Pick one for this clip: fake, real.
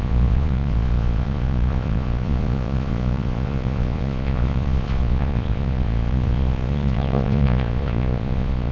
fake